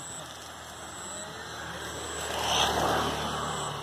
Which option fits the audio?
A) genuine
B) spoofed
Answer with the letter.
A